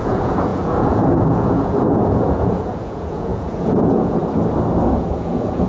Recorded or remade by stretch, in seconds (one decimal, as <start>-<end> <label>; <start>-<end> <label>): 0.0-4.2 remade; 4.2-5.0 recorded; 5.0-5.7 remade